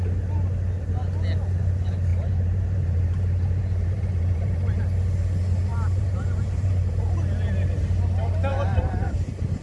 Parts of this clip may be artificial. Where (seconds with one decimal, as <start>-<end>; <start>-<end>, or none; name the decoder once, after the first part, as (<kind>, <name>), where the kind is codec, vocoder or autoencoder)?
2.1-4.8 (vocoder, BigVGAN v2); 5.7-7.0; 8.5-9.1